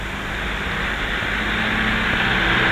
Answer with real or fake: real